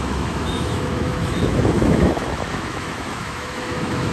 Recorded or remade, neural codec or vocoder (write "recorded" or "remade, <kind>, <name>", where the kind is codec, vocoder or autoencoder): remade, autoencoder, DAC-VAE